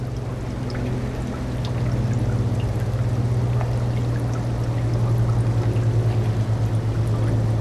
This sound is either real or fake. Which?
real